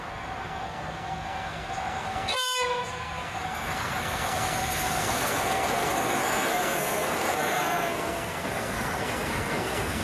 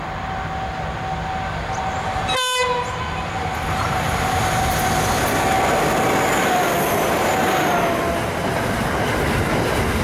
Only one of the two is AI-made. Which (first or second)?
first